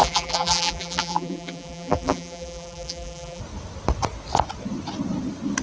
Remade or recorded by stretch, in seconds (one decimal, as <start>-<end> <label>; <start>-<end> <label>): 0.0-3.4 remade; 3.4-5.6 recorded